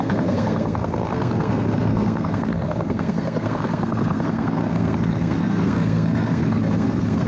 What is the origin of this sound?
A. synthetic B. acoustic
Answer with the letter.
A